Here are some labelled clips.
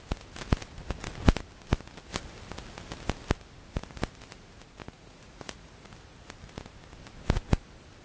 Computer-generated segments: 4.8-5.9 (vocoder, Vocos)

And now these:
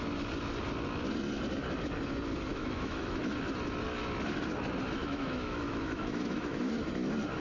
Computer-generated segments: 2.5-3.2 (autoencoder, DAC-VAE); 5.0-6.7

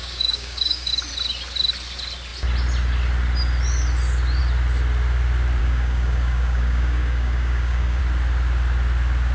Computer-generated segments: 0.0-0.9 (codec, DAC); 5.6-8.0

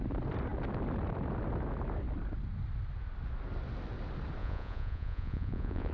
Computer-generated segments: 4.4-5.9 (vocoder, Vocos)

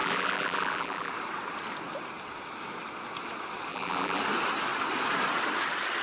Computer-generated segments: 0.0-1.1 (vocoder, BigVGAN v2); 3.7-4.2

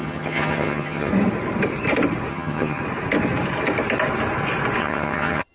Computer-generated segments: 0.0-1.1 (vocoder, HiFi-GAN); 2.3-2.8; 4.8-5.5

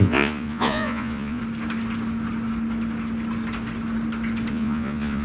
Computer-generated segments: 0.0-1.4 (vocoder, Vocos); 4.5-5.2

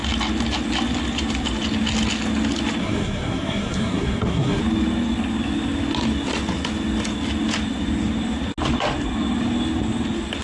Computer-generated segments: 2.8-4.6 (codec, SNAC)